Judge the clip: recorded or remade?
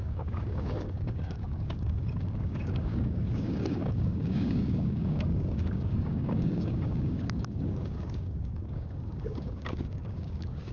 remade